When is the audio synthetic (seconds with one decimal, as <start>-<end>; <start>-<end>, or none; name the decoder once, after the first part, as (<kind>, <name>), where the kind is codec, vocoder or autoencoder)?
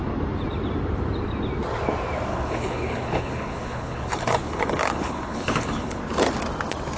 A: 2.3-6.0 (codec, HILCodec)